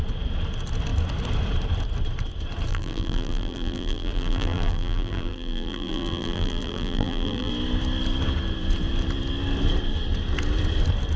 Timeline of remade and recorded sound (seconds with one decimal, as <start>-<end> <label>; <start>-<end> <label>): 0.0-2.7 recorded; 2.7-7.5 remade; 7.5-11.2 recorded